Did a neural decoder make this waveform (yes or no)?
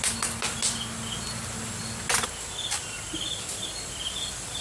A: no